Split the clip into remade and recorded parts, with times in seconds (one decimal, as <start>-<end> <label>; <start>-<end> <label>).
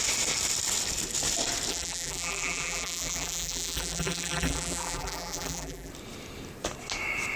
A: 0.0-1.7 recorded; 1.7-5.9 remade; 5.9-7.4 recorded